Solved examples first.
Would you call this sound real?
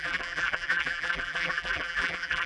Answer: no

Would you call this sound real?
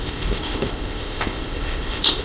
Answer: no